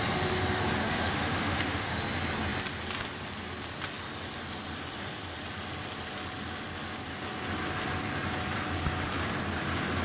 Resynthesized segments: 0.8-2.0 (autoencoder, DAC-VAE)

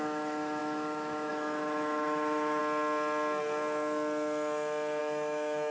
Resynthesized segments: 0.0-2.6 (autoencoder, DAC-VAE); 5.0-5.7

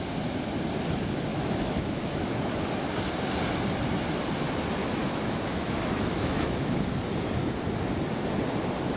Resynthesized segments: 1.3-2.5 (autoencoder, DAC-VAE); 4.8-6.9

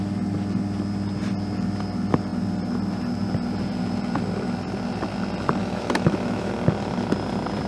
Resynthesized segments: 5.6-6.5 (autoencoder, DAC-VAE)

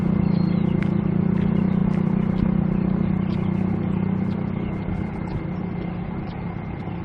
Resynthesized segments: none

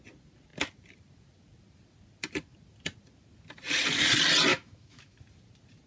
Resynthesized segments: 4.5-5.2 (autoencoder, DAC-VAE)